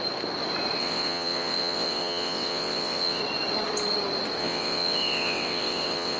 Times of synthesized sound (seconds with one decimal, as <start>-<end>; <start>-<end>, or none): 0.8-3.2; 4.4-6.2